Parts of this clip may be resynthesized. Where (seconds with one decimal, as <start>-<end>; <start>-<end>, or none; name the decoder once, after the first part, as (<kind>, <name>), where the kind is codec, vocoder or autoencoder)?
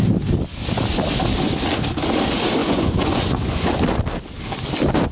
2.6-3.7 (vocoder, Vocos)